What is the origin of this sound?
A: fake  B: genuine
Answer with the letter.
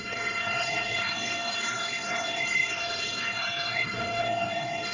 A